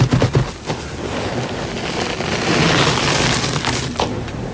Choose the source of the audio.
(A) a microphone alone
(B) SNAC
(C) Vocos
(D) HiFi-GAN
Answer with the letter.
A